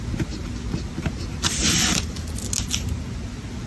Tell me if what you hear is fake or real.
real